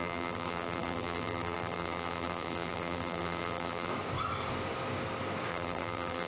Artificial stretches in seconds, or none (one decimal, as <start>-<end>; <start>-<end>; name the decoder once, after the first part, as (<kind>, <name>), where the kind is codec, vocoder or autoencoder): 0.0-3.9 (vocoder, BigVGAN v2); 5.5-6.3